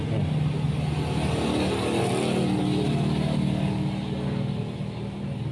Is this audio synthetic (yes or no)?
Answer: no